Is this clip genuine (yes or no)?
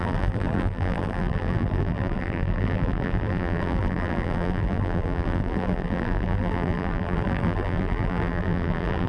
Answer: no